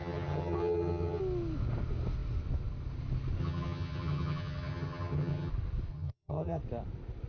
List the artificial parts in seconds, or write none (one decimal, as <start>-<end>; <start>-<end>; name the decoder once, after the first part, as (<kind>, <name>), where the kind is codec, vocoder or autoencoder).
0.0-1.2 (vocoder, HiFi-GAN); 3.4-5.5; 5.9-6.6